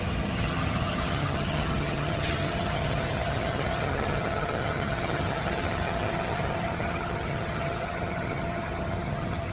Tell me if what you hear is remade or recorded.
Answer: remade